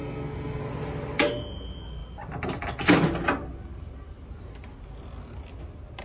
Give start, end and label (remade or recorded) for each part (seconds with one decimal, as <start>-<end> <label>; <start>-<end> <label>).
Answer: 0.0-0.6 remade; 0.6-6.0 recorded